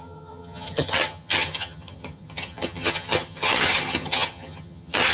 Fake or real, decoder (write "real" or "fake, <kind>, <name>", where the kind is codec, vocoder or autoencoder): fake, vocoder, HiFi-GAN